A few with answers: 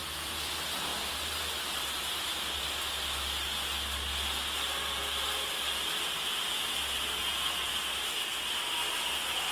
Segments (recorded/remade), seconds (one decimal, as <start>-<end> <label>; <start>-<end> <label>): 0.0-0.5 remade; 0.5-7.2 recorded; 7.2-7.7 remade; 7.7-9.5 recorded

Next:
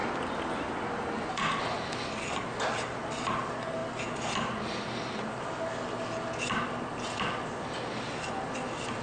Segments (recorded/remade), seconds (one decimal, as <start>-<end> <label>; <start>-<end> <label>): 0.0-9.0 recorded

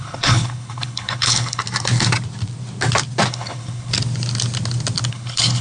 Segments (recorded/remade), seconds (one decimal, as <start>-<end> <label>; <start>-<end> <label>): 0.0-1.6 remade; 1.6-3.3 recorded; 3.3-3.9 remade; 3.9-5.1 recorded; 5.1-5.6 remade